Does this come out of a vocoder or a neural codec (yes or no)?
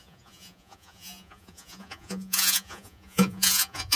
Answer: yes